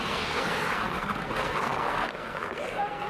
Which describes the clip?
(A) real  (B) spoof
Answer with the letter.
B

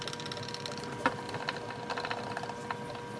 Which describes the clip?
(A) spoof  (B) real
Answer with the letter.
B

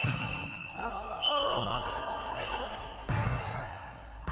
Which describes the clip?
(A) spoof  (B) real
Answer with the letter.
A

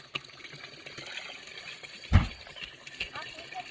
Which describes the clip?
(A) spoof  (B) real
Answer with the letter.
B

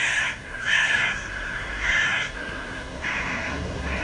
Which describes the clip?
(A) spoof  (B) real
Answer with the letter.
A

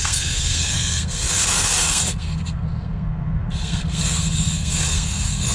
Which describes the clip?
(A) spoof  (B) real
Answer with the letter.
A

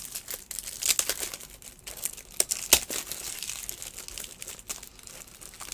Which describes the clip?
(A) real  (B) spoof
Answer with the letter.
A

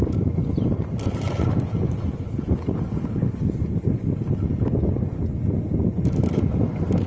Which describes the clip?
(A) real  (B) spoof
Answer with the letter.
A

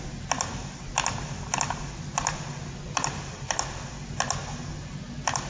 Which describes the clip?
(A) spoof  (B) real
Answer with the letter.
B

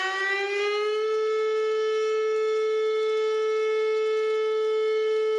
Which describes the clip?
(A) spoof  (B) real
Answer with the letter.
B